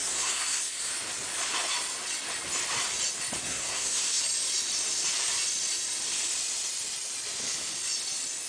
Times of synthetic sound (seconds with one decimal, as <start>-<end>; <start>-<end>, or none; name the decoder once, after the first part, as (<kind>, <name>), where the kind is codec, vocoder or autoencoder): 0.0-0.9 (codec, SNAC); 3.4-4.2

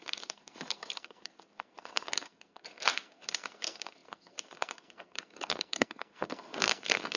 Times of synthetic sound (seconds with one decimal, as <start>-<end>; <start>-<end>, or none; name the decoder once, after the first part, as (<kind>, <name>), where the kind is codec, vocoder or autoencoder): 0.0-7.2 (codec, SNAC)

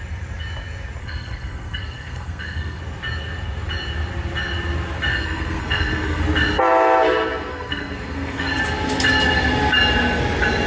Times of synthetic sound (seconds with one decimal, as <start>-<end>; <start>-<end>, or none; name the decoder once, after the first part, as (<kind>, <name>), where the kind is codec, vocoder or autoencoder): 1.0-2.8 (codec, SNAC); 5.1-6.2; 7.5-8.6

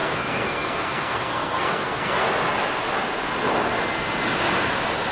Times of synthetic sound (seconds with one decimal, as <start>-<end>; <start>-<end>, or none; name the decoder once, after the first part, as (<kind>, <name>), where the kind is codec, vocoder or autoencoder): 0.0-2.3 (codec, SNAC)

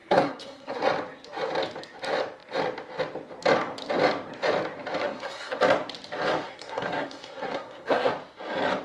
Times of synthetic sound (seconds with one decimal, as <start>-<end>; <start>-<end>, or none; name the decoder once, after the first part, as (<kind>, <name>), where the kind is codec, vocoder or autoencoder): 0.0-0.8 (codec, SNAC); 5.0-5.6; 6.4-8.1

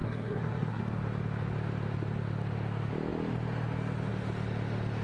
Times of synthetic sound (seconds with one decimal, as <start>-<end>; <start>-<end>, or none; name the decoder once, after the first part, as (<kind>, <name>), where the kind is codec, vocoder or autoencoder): 0.0-0.8 (codec, SNAC)

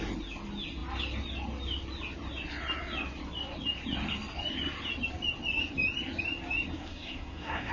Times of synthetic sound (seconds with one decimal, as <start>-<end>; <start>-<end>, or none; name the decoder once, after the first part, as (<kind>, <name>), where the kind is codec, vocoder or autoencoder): 6.8-7.7 (codec, SNAC)

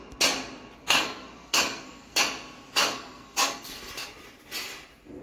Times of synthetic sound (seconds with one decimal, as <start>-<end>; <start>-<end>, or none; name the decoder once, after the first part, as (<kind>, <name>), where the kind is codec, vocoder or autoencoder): 0.8-2.2 (codec, SNAC); 2.8-3.9